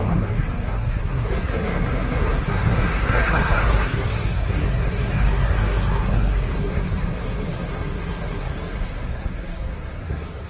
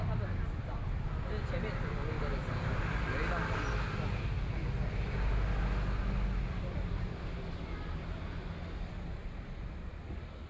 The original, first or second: second